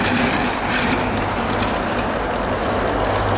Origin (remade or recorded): recorded